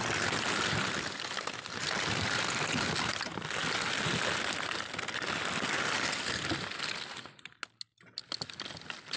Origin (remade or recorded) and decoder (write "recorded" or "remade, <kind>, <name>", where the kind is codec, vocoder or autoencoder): recorded